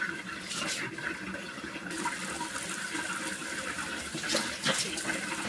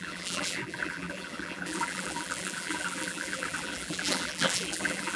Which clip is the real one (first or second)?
first